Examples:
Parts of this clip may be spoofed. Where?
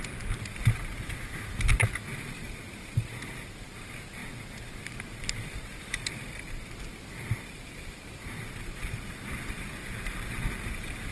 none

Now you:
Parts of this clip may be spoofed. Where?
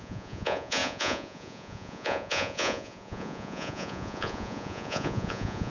0.0-5.7 (vocoder, Vocos)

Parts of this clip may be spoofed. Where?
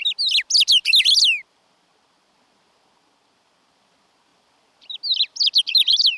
none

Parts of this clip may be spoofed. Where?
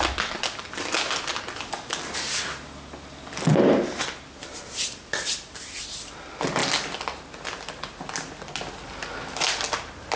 none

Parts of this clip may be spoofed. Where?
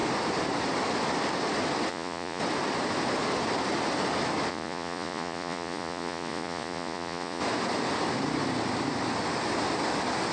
1.9-2.4 (vocoder, Vocos); 4.5-7.4